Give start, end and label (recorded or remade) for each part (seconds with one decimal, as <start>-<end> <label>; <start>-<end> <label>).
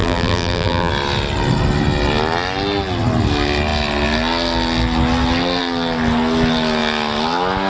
0.0-0.9 remade; 0.9-7.7 recorded